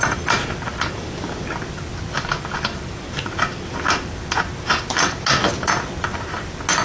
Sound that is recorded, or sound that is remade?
recorded